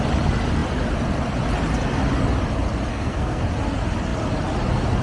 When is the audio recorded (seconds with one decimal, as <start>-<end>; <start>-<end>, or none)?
0.0-2.9; 3.4-5.0